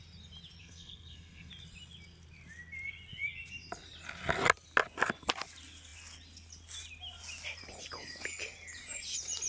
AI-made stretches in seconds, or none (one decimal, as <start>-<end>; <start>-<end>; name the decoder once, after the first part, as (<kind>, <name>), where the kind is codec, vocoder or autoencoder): 0.6-1.5 (codec, SNAC)